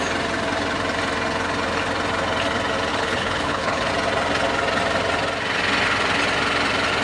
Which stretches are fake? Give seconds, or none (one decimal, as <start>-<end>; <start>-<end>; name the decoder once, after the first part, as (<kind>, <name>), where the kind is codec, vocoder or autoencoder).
2.9-3.9 (codec, HILCodec)